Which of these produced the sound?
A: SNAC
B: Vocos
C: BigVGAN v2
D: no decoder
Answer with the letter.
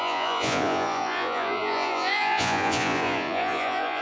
B